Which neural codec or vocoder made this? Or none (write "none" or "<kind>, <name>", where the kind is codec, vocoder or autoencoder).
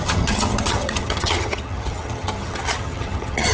vocoder, HiFi-GAN